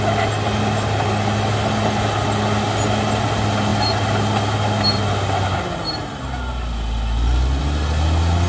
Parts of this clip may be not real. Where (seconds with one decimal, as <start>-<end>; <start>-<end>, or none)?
none